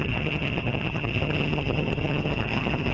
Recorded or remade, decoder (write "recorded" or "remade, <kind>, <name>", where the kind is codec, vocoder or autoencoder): remade, vocoder, HiFi-GAN